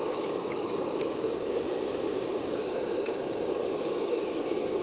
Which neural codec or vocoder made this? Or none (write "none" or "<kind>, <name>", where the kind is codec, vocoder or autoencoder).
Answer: codec, DAC